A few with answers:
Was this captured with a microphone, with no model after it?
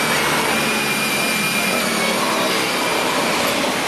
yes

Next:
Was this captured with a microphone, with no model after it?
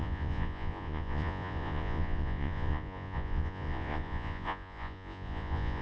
no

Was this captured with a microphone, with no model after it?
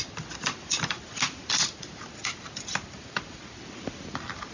yes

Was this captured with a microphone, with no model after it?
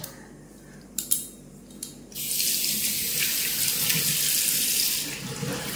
yes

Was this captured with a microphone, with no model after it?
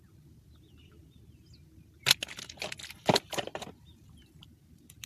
yes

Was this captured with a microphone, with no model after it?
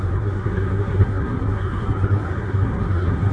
no